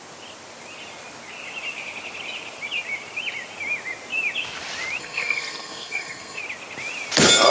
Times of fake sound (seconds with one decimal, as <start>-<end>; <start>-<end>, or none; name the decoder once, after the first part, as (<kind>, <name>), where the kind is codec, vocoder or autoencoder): 5.0-6.4 (codec, SNAC)